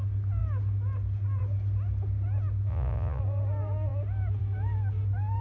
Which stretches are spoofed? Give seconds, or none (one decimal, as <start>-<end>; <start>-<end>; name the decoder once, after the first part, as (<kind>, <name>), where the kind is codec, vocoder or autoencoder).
2.7-3.2 (vocoder, Vocos)

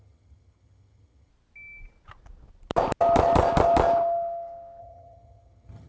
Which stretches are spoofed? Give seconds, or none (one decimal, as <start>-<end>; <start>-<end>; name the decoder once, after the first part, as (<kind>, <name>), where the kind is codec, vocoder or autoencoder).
0.0-1.3 (vocoder, HiFi-GAN); 4.8-5.9

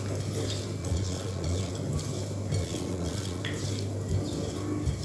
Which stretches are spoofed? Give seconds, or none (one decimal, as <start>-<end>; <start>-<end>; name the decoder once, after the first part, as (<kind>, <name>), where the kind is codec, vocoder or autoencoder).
0.8-1.7 (vocoder, Vocos); 2.6-3.4

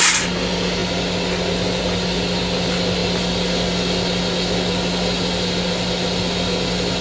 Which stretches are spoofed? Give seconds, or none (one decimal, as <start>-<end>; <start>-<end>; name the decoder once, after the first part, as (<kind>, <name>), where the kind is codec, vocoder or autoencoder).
none

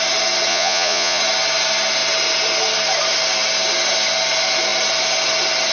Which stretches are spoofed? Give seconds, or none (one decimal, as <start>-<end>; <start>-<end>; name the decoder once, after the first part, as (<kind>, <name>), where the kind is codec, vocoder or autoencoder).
0.5-1.2 (vocoder, Vocos)

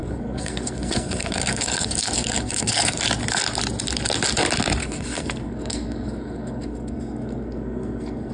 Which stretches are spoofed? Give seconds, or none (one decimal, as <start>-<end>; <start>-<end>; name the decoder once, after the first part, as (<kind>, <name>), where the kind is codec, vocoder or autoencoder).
0.0-3.0 (codec, SNAC); 4.8-8.3